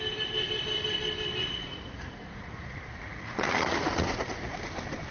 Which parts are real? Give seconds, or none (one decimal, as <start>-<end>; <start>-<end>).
0.0-1.4; 4.5-5.1